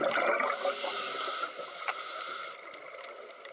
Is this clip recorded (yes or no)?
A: yes